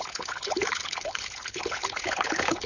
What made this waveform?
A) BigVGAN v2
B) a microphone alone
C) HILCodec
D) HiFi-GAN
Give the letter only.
C